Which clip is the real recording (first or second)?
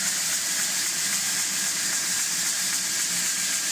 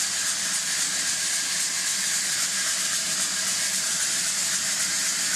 second